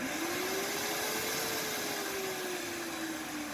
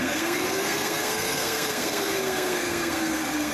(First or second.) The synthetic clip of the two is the second